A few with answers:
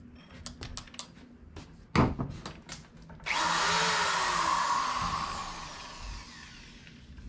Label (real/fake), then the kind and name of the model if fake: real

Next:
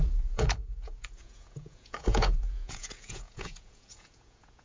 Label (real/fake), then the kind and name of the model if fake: fake, vocoder, Vocos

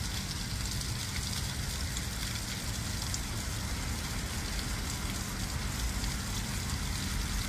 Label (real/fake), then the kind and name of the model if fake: real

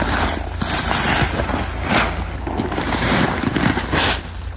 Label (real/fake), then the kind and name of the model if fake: real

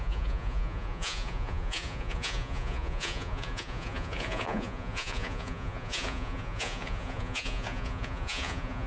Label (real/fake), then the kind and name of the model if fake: fake, vocoder, Vocos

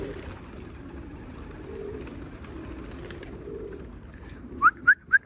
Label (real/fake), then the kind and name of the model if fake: real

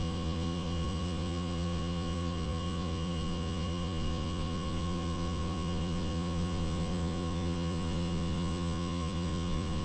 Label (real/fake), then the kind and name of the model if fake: fake, vocoder, Vocos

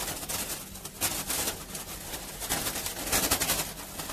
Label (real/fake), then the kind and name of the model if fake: real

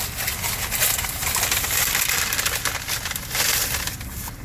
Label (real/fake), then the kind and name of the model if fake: real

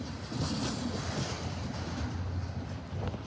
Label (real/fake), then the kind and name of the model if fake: real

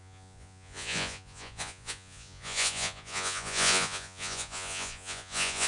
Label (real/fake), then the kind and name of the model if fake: fake, vocoder, Vocos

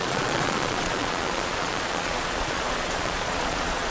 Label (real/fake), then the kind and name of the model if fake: fake, vocoder, Vocos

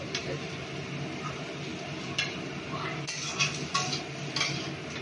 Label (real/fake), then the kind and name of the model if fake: real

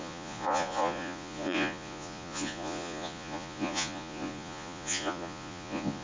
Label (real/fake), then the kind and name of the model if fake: fake, vocoder, Vocos